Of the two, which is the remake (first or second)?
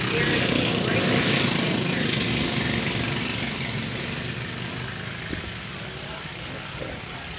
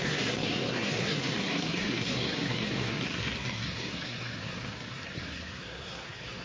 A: second